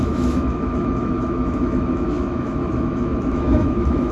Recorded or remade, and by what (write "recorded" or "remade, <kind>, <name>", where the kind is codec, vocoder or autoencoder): remade, autoencoder, DAC-VAE